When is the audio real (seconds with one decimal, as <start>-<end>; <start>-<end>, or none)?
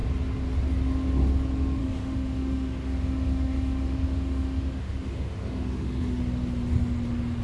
0.0-1.8; 6.2-7.4